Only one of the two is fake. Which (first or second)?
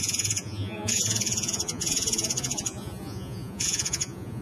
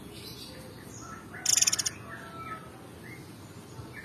first